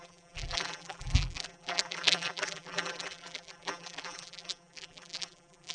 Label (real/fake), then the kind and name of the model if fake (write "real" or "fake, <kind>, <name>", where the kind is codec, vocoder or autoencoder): fake, vocoder, BigVGAN v2